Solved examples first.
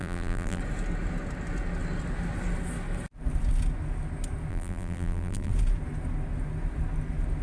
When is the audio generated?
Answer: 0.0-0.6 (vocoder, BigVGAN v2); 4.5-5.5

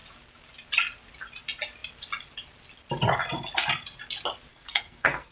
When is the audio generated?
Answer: 4.5-5.3 (codec, SNAC)

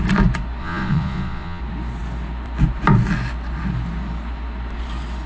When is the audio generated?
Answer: 0.6-1.6 (vocoder, Vocos)

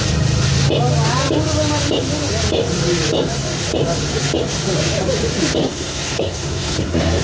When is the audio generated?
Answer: 5.6-7.2 (codec, SNAC)

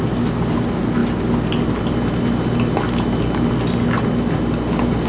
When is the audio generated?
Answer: none

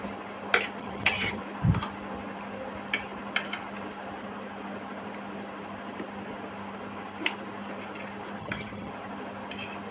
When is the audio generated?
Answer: 0.8-1.4 (vocoder, HiFi-GAN); 8.4-8.9

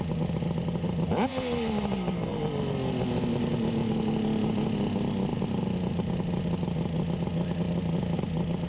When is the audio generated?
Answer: none

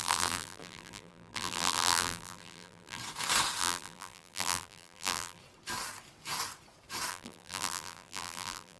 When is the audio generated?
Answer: 0.0-3.0 (vocoder, BigVGAN v2); 3.6-5.4; 7.1-8.8